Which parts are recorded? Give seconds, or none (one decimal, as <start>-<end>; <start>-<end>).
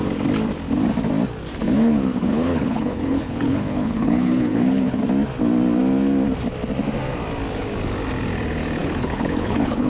0.0-1.6; 5.0-8.8